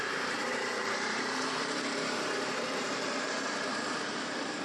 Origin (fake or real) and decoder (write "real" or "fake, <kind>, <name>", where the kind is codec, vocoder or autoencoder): fake, vocoder, BigVGAN v2